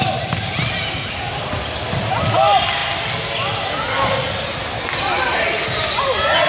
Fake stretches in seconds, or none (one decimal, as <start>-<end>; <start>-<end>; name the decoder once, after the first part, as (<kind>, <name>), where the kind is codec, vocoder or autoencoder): none